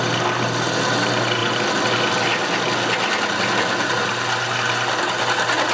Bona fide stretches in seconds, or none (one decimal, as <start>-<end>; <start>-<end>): 0.0-5.7